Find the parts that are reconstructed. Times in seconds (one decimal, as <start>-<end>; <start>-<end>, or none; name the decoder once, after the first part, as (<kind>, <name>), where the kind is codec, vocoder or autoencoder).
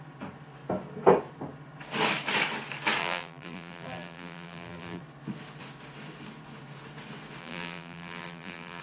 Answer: 3.0-5.0 (vocoder, BigVGAN v2); 7.4-8.8